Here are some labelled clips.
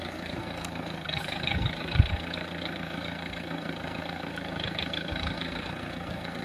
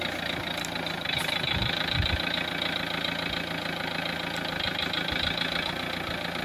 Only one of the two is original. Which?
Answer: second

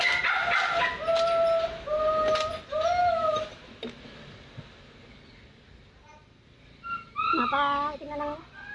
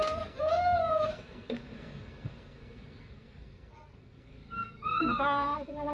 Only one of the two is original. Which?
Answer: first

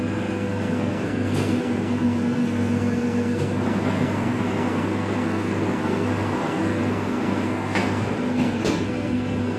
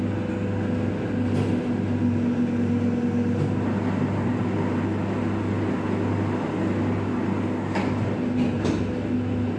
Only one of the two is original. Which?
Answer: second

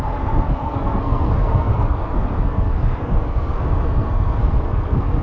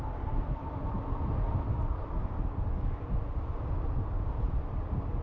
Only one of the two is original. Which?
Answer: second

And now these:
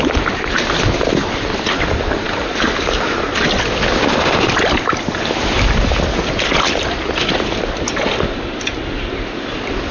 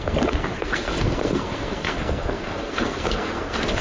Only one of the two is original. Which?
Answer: first